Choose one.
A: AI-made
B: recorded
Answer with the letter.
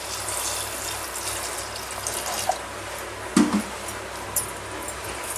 B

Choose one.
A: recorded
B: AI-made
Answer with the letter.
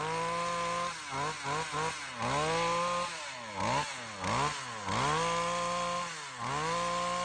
A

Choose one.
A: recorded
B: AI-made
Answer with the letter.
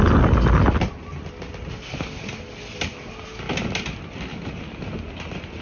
A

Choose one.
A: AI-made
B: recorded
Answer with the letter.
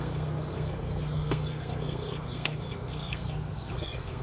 A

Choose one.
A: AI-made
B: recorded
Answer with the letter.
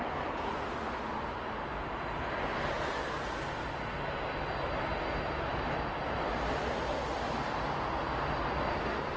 B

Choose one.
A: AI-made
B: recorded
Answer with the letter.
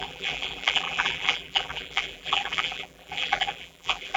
A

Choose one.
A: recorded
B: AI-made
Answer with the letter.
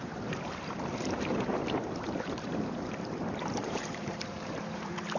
B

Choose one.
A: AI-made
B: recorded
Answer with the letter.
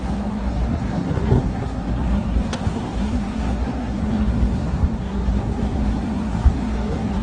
A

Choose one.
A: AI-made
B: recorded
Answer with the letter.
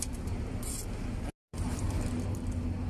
B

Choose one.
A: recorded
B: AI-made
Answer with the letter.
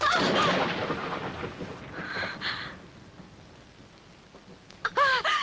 A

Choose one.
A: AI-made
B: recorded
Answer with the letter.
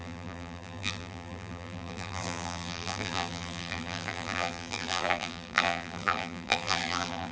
A